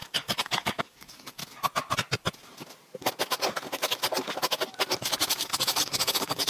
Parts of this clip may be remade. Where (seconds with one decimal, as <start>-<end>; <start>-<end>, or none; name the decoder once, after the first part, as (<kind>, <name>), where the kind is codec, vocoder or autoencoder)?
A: 0.0-1.4 (codec, DAC); 5.3-6.5